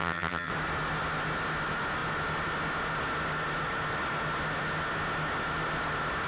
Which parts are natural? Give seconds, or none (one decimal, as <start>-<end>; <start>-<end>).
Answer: 0.5-6.3